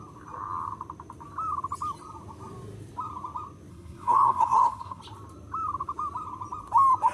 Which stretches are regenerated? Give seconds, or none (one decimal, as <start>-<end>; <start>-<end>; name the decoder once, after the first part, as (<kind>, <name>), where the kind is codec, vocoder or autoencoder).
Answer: 3.7-5.0 (codec, SNAC)